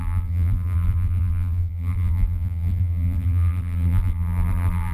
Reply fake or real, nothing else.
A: fake